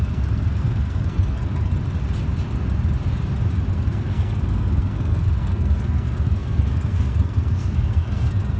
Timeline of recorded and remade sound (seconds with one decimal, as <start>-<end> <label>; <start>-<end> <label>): 0.0-1.7 remade; 1.7-3.7 recorded; 3.7-8.6 remade

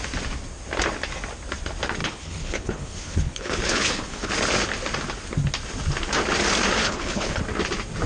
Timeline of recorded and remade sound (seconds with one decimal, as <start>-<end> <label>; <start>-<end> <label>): 0.0-2.0 recorded; 2.0-4.3 remade; 4.3-6.8 recorded; 6.8-7.4 remade; 7.4-8.1 recorded

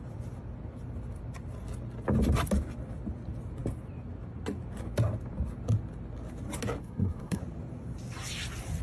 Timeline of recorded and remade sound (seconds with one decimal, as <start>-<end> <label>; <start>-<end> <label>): 0.0-6.8 recorded; 6.8-7.4 remade; 7.4-8.8 recorded